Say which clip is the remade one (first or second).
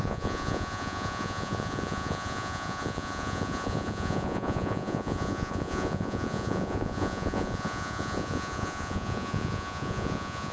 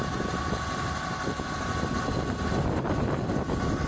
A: first